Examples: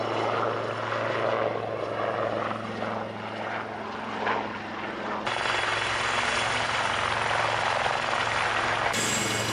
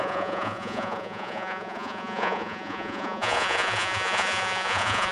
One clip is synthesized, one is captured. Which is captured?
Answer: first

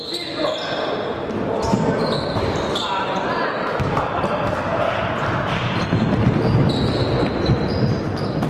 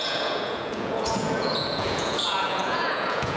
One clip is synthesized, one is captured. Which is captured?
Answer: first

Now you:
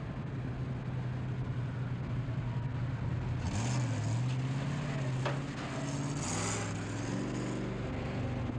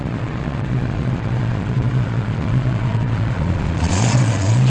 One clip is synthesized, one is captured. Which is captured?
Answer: first